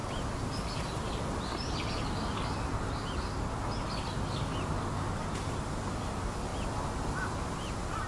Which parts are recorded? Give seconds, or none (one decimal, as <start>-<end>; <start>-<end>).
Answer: 0.0-8.1